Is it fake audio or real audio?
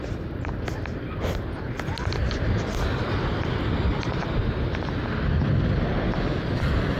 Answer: real